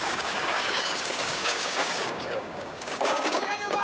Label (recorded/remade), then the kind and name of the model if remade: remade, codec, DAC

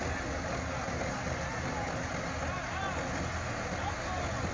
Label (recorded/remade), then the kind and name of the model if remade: recorded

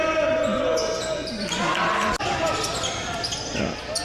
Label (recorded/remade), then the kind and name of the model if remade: recorded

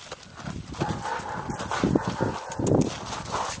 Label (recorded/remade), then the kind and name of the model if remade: recorded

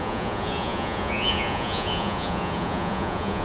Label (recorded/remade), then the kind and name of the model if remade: remade, vocoder, Vocos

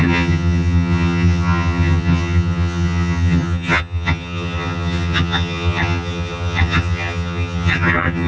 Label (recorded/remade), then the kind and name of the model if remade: remade, vocoder, HiFi-GAN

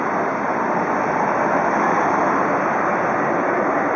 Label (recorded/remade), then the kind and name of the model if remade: recorded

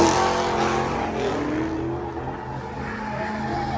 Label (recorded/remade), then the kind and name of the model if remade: recorded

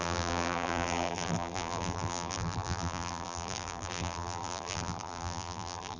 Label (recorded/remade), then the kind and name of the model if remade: remade, vocoder, BigVGAN v2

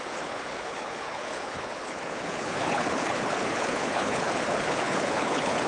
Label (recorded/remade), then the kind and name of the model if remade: remade, codec, HILCodec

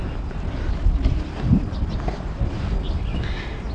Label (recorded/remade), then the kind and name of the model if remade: recorded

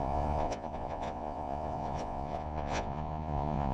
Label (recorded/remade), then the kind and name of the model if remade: remade, vocoder, Vocos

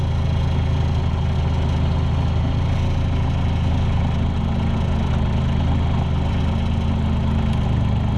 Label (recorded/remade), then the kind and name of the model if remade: recorded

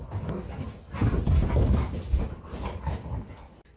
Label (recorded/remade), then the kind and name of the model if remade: recorded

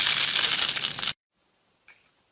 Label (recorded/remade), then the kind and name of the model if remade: recorded